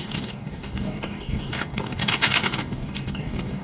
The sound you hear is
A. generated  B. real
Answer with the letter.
A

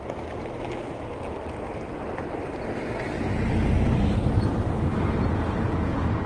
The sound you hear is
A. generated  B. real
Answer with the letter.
B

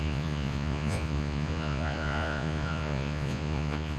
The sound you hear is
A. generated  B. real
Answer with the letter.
A